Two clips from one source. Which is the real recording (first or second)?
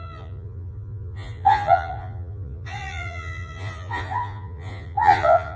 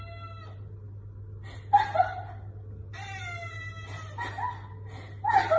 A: second